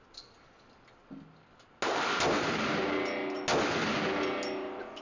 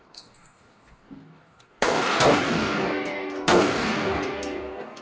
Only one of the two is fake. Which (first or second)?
second